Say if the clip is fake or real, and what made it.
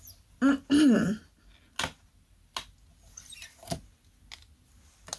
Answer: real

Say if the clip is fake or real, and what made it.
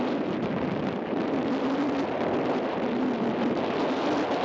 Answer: real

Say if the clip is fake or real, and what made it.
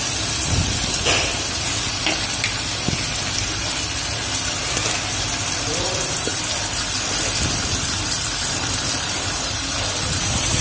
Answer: fake, vocoder, BigVGAN v2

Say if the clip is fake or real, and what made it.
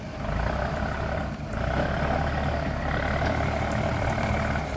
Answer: fake, vocoder, BigVGAN v2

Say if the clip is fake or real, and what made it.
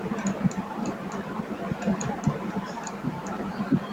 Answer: fake, vocoder, BigVGAN v2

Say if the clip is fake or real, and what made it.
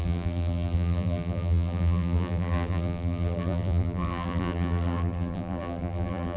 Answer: fake, vocoder, BigVGAN v2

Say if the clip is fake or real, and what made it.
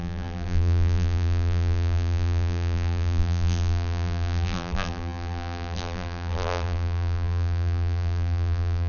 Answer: fake, vocoder, BigVGAN v2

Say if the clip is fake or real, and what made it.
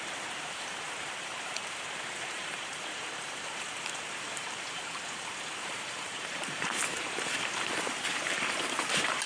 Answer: fake, vocoder, BigVGAN v2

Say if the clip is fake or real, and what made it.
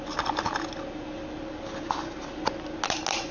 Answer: real